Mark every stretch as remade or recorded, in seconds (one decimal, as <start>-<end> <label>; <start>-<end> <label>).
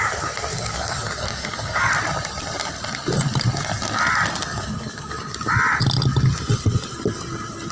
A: 0.0-0.5 recorded; 0.5-1.9 remade; 1.9-4.5 recorded; 4.5-5.2 remade; 5.2-7.7 recorded